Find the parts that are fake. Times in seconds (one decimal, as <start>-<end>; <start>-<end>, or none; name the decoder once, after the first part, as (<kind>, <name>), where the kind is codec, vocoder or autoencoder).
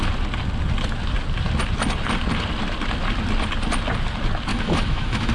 4.5-5.3 (autoencoder, DAC-VAE)